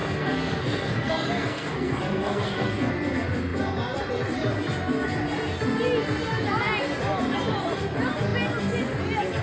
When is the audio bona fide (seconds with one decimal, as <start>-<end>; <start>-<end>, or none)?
2.9-9.4